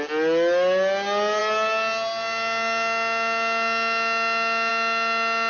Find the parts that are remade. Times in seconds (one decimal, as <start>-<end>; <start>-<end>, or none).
none